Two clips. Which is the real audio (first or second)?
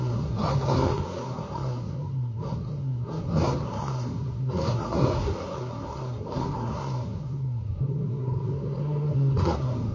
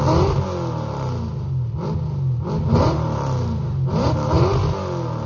second